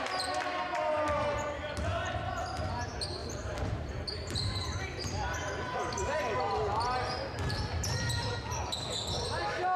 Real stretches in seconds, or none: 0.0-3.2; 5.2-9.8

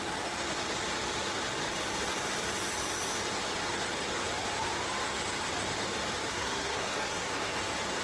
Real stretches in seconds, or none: 0.0-6.3; 7.5-8.0

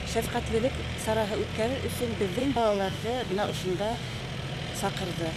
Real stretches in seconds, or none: 0.0-2.4; 4.2-5.4